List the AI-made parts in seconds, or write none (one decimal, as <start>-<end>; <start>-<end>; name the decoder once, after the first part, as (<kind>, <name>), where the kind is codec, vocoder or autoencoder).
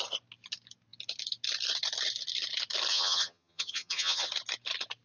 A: 2.9-4.3 (vocoder, HiFi-GAN)